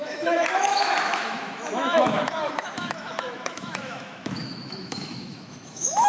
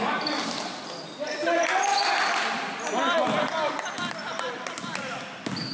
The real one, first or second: second